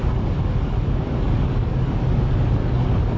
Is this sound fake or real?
fake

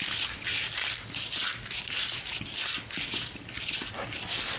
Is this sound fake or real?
real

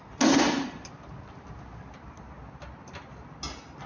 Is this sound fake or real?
real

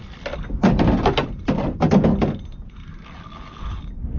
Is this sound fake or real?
real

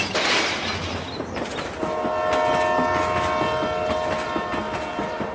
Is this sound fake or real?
real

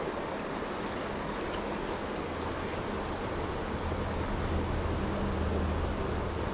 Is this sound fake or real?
real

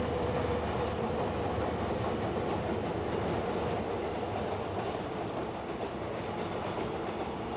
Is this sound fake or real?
real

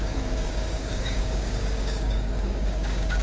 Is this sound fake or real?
fake